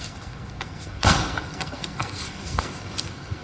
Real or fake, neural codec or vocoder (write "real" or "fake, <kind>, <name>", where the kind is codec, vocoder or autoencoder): fake, codec, SNAC